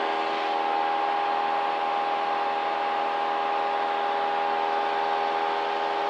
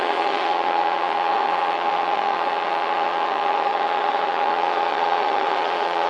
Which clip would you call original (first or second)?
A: first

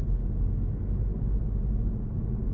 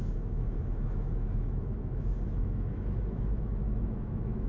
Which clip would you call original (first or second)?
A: first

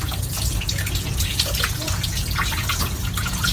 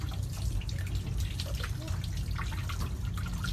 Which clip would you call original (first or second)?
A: second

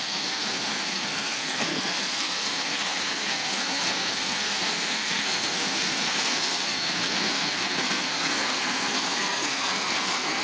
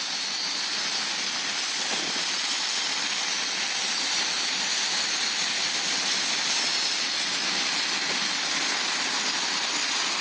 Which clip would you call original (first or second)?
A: second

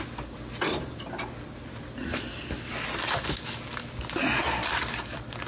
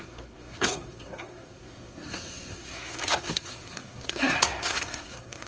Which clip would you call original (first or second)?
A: first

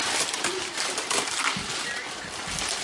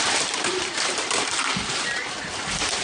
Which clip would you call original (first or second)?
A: first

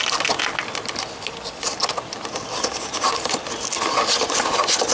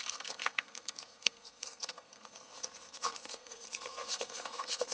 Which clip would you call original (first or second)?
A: first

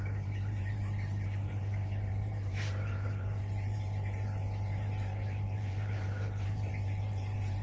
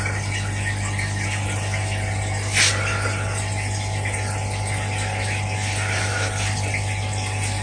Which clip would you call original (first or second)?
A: second